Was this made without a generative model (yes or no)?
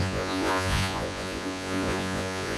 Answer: no